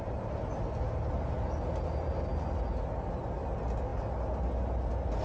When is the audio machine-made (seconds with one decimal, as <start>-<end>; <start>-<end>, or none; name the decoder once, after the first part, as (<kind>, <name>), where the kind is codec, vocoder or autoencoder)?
none